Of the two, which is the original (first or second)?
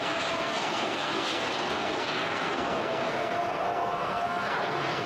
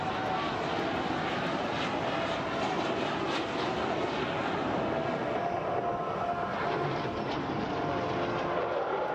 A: second